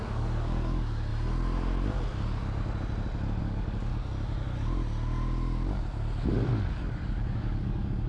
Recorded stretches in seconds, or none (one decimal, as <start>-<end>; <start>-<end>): 1.1-3.4; 3.9-6.7